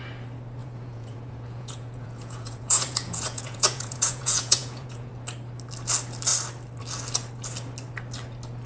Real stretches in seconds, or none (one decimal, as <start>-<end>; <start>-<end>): 0.0-0.6; 5.1-8.7